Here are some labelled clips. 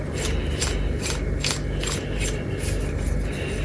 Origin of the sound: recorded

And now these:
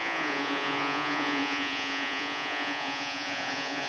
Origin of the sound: remade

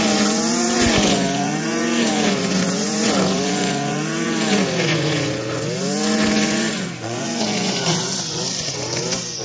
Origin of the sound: remade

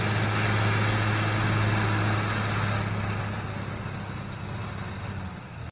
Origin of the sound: recorded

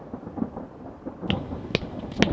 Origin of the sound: recorded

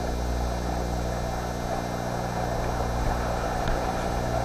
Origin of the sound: recorded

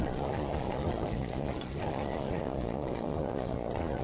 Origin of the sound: remade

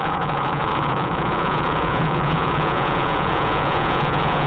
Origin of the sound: remade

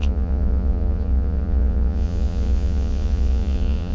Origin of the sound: remade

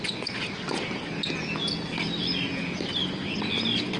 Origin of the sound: recorded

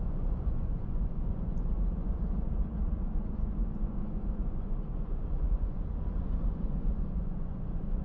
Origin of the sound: remade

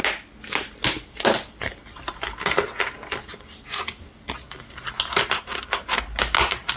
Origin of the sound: recorded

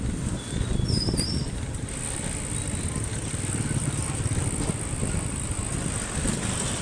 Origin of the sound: recorded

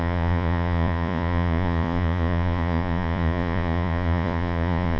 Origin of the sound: remade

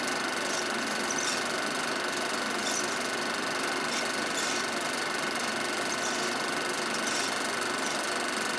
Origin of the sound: recorded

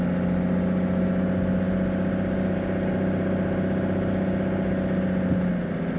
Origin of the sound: recorded